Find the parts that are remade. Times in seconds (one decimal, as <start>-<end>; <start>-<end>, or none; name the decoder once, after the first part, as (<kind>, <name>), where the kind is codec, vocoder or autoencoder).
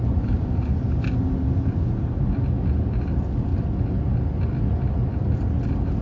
none